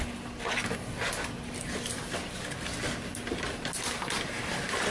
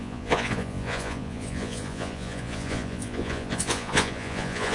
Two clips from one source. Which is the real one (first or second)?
first